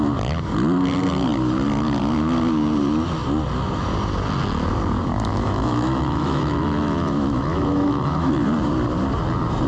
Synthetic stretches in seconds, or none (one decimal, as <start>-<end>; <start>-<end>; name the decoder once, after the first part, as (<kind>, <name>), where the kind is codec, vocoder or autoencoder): 5.3-8.3 (autoencoder, DAC-VAE)